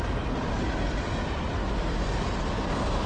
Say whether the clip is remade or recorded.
recorded